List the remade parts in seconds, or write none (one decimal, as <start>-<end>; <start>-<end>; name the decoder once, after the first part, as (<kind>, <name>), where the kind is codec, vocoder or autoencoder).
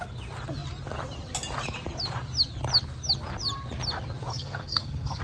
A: 4.3-5.2 (codec, SNAC)